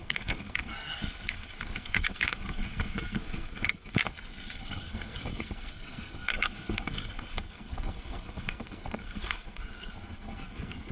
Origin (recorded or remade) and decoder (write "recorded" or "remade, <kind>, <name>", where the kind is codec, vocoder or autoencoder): remade, codec, SNAC